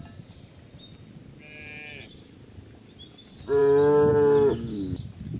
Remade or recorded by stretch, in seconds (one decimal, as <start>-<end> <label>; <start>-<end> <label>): 0.0-5.4 recorded